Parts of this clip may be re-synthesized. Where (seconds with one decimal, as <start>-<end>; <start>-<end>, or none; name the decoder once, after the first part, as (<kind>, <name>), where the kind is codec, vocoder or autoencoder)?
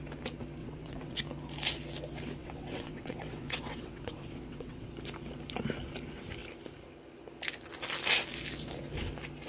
0.6-1.2 (vocoder, WaveNeXt); 2.4-4.9